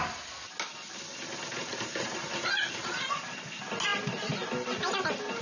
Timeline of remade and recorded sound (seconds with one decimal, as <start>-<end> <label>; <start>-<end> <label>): 0.0-1.7 recorded; 1.7-3.4 remade; 3.4-5.4 recorded